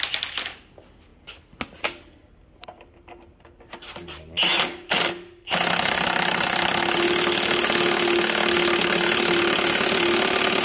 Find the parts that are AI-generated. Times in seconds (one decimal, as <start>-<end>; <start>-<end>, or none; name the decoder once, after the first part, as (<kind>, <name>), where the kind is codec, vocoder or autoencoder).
none